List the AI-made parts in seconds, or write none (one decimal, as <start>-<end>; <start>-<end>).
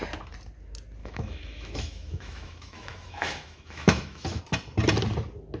1.0-4.4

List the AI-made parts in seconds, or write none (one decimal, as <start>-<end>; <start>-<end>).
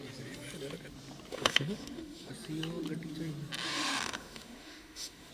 1.3-2.3; 3.6-5.3